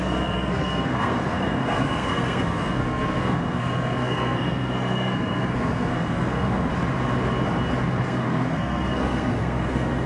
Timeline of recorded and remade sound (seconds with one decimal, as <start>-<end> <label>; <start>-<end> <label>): 0.0-6.7 remade; 6.7-7.9 recorded; 7.9-10.1 remade